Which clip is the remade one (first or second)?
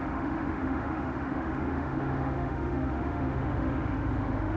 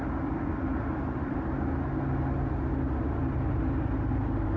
first